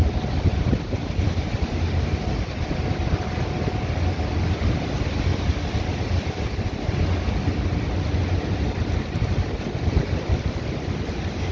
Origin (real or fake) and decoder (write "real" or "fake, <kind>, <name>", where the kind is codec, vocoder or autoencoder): real